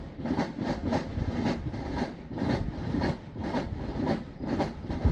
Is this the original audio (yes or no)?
no